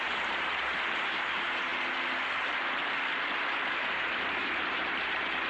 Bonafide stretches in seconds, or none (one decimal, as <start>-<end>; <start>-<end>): 1.7-3.8